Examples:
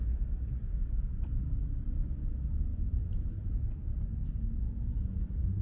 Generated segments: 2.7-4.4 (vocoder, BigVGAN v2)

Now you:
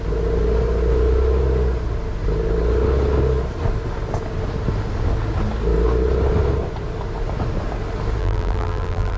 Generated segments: 8.2-9.2 (vocoder, BigVGAN v2)

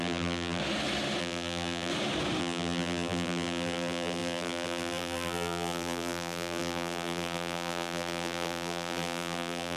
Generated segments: 0.0-0.6 (vocoder, BigVGAN v2); 1.2-1.9; 2.4-9.8